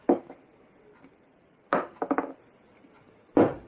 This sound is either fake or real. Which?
real